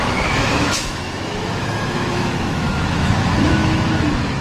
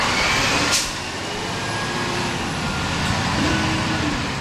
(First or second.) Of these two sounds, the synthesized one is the first